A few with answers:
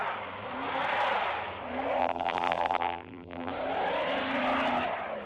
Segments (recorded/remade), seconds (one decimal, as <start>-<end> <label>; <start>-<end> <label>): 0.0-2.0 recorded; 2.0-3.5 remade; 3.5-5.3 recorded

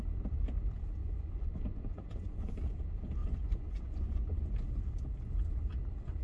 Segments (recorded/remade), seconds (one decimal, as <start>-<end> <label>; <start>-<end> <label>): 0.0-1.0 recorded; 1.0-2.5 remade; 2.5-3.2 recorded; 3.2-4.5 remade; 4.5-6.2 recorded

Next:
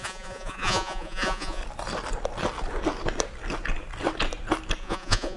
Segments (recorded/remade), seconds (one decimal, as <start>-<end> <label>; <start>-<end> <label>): 0.0-1.6 remade; 1.6-4.8 recorded; 4.8-5.4 remade

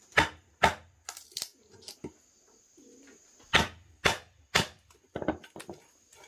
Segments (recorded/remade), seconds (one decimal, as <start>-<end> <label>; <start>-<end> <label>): 0.0-6.3 recorded

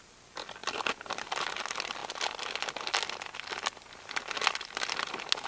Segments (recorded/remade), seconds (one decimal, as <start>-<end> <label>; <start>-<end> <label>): 0.0-5.5 recorded